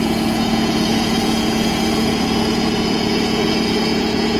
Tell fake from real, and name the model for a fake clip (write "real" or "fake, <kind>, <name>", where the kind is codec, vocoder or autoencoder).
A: fake, vocoder, Vocos